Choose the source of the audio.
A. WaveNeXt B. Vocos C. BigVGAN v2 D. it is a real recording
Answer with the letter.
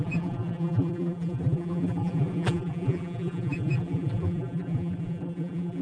C